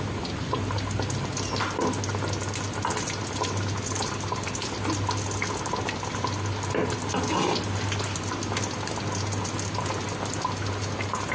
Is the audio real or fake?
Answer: real